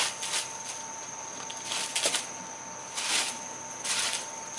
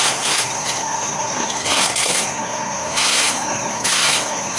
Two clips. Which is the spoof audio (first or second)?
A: second